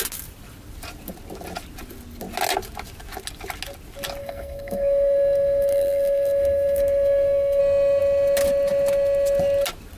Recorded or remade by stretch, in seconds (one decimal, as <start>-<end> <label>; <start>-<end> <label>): 0.0-4.2 recorded; 4.2-7.6 remade; 7.6-10.0 recorded